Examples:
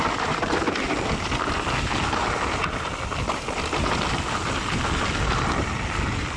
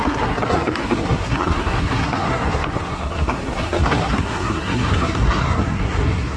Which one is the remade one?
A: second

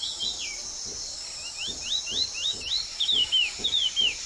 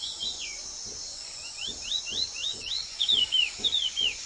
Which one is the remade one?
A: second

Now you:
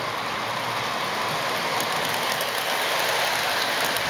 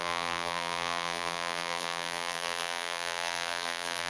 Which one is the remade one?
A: second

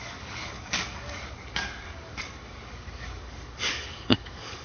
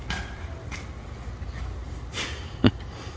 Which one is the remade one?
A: first